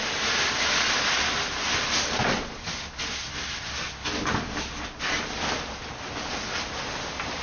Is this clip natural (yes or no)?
yes